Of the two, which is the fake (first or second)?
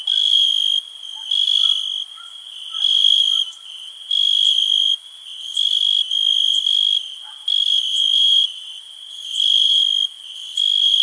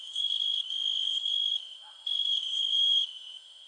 second